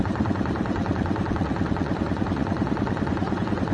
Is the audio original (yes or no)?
no